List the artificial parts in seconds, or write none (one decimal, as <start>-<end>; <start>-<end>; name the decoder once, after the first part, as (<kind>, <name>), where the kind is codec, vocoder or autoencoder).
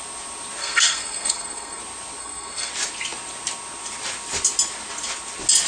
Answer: 0.6-1.8 (codec, SNAC); 2.2-2.7